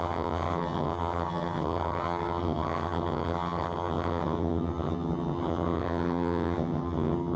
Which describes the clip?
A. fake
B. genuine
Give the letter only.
A